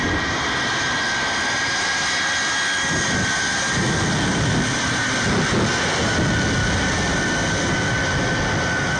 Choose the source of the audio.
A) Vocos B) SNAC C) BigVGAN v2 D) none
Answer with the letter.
D